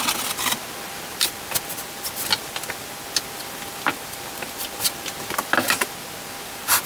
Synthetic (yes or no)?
no